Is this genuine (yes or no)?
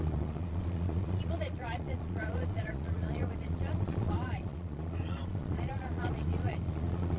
no